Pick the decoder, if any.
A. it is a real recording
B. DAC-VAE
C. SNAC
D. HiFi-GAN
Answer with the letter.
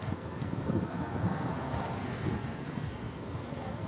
C